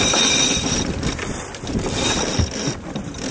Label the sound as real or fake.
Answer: real